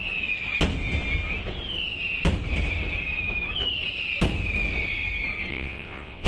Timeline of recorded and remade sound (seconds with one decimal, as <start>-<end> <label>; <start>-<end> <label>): 0.0-5.5 recorded; 5.5-6.3 remade

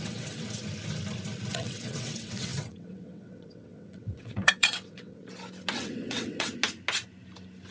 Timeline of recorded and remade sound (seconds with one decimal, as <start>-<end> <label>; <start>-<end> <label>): 0.0-0.6 remade; 0.6-1.5 recorded; 1.5-5.2 remade; 5.2-5.7 recorded; 5.7-6.5 remade; 6.5-7.7 recorded